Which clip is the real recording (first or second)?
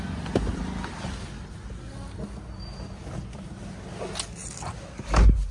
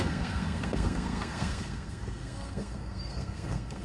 first